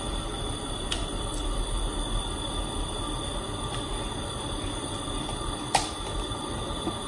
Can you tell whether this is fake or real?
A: real